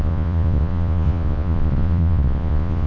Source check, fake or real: fake